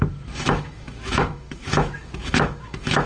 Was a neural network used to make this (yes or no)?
yes